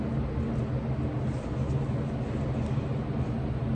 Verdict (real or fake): real